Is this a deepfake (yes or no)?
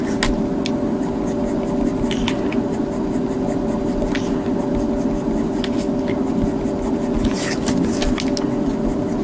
no